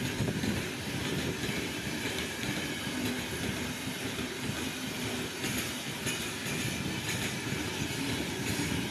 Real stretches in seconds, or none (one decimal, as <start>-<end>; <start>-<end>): 0.0-8.9